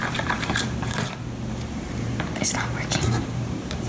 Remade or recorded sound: remade